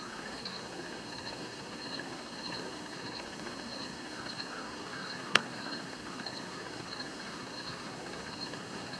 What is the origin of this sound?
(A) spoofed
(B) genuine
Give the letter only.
A